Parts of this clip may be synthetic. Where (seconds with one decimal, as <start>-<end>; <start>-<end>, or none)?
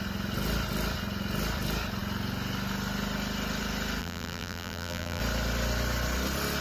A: 4.0-5.2